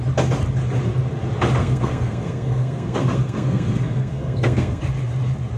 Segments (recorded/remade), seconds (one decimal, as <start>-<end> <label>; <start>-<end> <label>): 0.0-1.6 recorded; 1.6-4.8 remade; 4.8-5.6 recorded